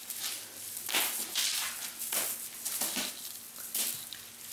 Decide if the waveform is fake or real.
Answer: real